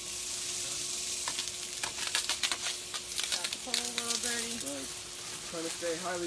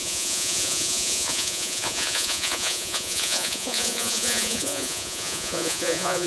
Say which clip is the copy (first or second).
second